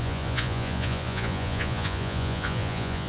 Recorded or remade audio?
remade